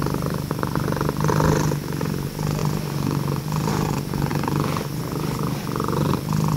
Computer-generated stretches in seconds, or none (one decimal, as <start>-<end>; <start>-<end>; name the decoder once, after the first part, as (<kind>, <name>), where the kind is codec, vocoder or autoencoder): none